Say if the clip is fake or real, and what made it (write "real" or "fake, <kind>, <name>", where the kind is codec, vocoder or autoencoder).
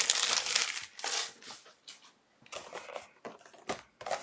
real